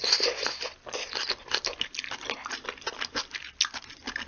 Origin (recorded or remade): recorded